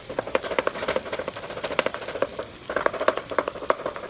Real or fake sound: fake